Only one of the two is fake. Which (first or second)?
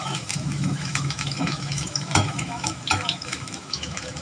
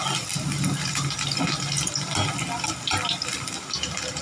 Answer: first